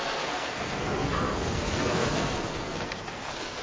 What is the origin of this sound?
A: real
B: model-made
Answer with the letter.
B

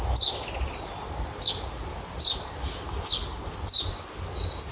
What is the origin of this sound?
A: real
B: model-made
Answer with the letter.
A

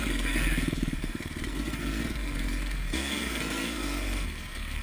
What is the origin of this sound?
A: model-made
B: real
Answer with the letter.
A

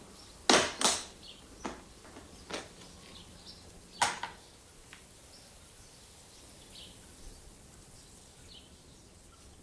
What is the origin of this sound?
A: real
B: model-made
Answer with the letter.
A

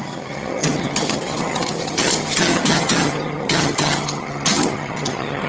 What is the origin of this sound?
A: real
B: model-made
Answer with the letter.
B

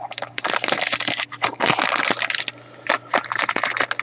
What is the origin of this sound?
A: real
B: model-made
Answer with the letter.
A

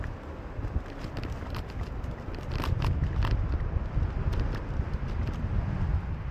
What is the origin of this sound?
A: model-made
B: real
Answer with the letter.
B